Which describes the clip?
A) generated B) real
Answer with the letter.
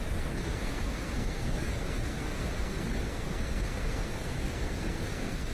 A